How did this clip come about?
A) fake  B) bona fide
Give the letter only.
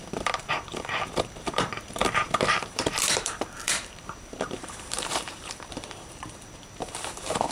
A